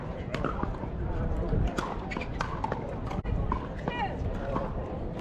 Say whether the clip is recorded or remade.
remade